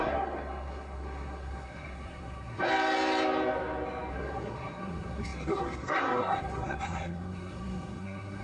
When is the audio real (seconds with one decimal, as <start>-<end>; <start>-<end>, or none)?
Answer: 2.7-4.1